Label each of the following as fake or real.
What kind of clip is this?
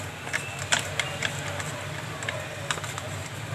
real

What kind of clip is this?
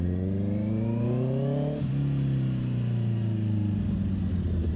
real